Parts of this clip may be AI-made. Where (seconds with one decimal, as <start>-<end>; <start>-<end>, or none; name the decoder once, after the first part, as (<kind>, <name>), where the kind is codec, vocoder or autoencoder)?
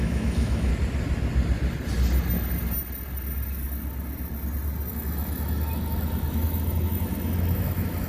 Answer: 0.0-0.7 (autoencoder, DAC-VAE); 4.9-8.1